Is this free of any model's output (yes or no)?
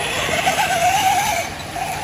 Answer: yes